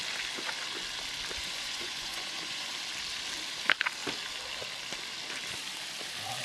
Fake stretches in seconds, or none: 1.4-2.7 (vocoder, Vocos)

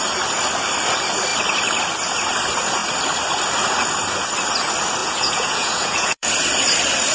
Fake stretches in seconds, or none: 5.0-6.3 (vocoder, Vocos)